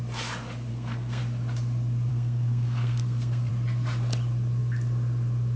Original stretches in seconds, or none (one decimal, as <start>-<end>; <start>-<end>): 0.0-0.7; 1.2-2.1; 3.5-5.6